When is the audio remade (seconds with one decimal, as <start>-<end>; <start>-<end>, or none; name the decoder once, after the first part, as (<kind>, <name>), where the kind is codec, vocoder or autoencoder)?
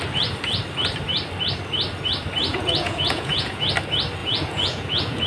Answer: 2.5-3.7 (vocoder, Vocos); 4.2-5.3